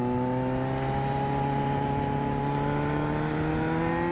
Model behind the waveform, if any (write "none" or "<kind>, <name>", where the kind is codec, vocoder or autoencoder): none